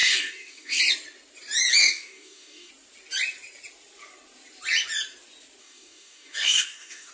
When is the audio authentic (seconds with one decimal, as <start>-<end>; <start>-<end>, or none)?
0.8-1.8; 2.7-5.6